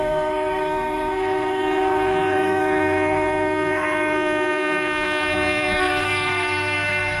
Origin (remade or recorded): remade